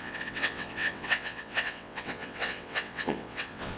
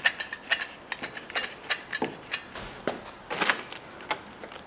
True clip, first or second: second